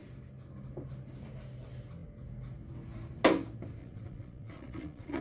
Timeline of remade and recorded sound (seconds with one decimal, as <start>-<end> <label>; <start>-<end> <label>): 0.0-3.8 recorded; 3.8-5.2 remade